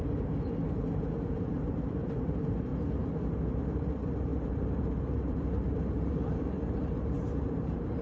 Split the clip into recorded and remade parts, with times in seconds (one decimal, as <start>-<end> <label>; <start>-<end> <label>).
0.0-2.7 remade; 2.7-3.5 recorded; 3.5-8.0 remade